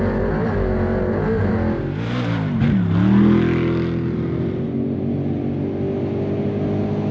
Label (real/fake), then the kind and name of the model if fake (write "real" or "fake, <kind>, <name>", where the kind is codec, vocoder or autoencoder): real